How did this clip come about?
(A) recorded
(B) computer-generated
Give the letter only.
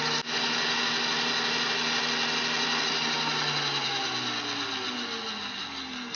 A